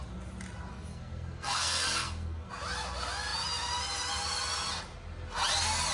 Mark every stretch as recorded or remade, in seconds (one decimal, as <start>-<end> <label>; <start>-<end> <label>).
0.0-0.7 recorded; 0.7-2.5 remade; 2.5-5.9 recorded